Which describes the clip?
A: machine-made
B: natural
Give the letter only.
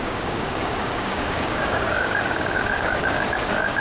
A